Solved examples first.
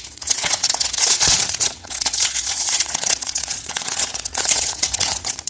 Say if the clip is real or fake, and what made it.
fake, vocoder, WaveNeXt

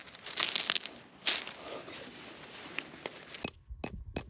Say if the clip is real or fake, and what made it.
real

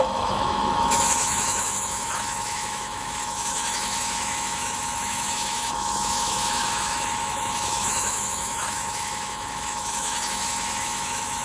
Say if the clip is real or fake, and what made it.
fake, autoencoder, DAC-VAE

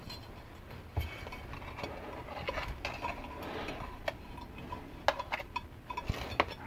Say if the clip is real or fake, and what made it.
real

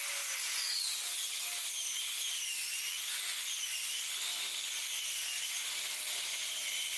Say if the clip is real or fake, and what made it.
real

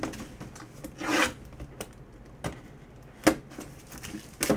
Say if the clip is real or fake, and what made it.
real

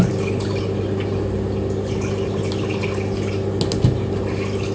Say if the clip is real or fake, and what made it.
real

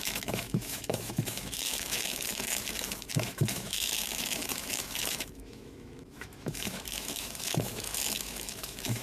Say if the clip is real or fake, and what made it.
fake, autoencoder, DAC-VAE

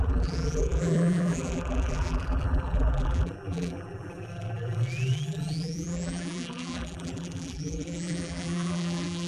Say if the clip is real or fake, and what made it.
fake, vocoder, BigVGAN v2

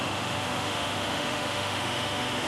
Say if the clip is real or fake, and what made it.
fake, autoencoder, DAC-VAE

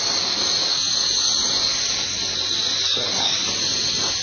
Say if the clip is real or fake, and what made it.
real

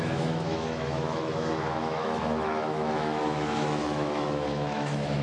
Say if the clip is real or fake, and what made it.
fake, autoencoder, DAC-VAE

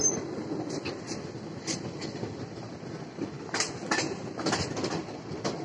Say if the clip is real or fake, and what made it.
real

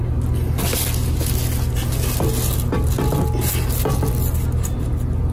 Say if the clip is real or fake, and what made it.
real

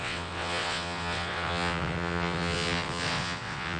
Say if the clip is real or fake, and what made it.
fake, vocoder, WaveNeXt